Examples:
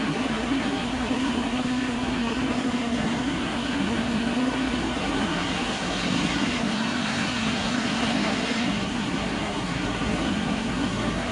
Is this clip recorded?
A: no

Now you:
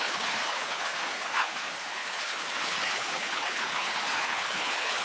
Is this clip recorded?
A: no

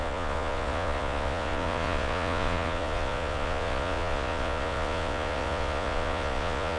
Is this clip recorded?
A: no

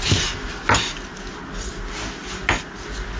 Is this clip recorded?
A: yes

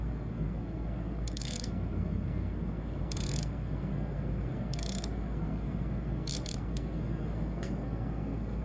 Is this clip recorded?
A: no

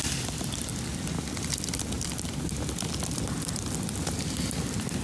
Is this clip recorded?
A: yes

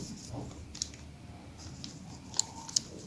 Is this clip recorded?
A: yes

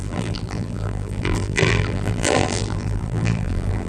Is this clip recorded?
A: no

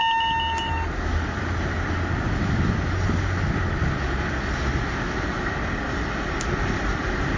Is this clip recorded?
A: yes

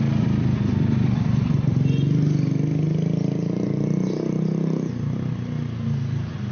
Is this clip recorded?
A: yes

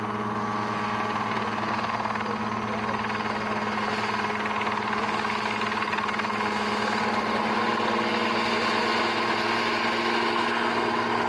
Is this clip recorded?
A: yes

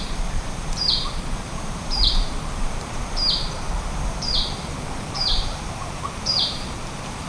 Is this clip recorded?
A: no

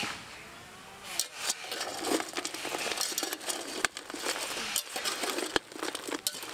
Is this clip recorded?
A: yes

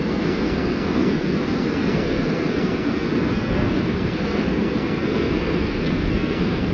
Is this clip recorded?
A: no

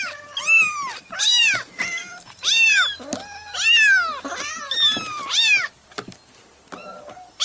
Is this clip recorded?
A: yes